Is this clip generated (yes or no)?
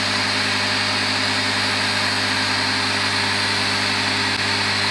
no